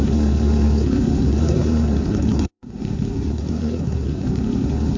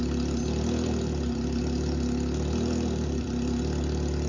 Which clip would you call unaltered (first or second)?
second